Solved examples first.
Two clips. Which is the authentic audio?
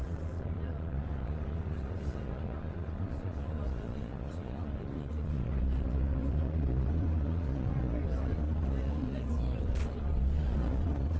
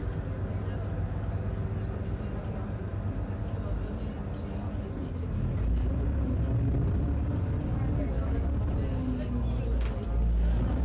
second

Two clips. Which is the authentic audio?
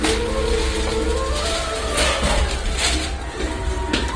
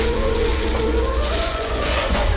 first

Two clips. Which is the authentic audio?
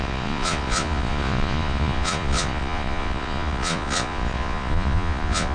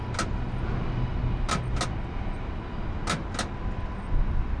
second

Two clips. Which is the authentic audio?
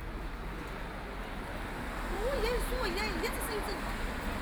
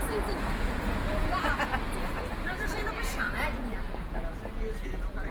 first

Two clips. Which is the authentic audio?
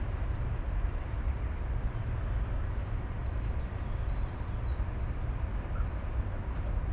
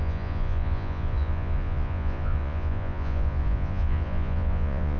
first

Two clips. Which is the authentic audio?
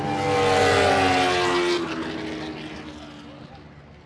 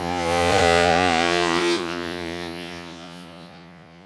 first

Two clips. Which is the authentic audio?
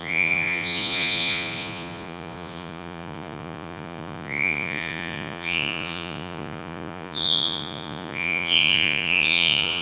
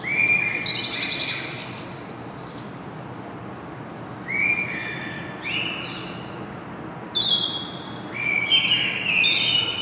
second